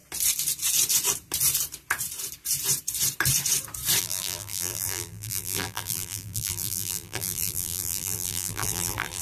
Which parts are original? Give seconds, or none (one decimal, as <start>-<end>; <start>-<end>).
0.0-4.0